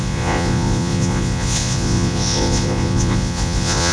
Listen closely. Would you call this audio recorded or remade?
remade